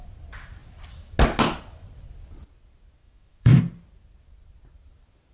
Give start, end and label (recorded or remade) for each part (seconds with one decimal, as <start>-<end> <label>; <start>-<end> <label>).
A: 0.0-3.0 recorded; 3.0-3.6 remade; 3.6-5.3 recorded

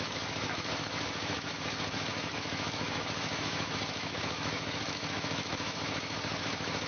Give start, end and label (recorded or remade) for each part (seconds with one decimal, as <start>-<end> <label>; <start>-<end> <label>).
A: 0.0-6.9 remade

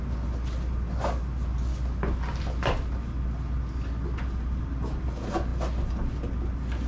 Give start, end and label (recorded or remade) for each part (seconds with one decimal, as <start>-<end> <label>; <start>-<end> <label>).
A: 0.0-6.9 recorded

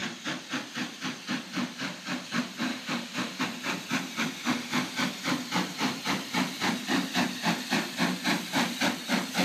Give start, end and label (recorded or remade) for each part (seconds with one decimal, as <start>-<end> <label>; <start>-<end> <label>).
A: 0.0-2.7 recorded; 2.7-3.4 remade; 3.4-4.4 recorded; 4.4-4.9 remade; 4.9-9.4 recorded

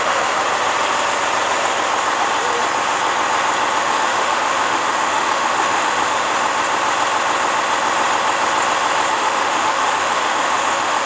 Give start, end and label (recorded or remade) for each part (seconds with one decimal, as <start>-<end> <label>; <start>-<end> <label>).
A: 0.0-0.4 remade; 0.4-3.8 recorded; 3.8-6.3 remade; 6.3-9.1 recorded; 9.1-11.1 remade

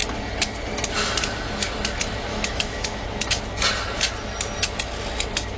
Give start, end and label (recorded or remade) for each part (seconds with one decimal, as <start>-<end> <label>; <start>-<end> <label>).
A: 0.0-2.3 recorded; 2.3-3.0 remade; 3.0-5.6 recorded